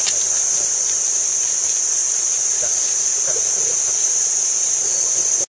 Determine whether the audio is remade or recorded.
recorded